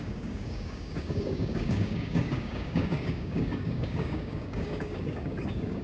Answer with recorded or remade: remade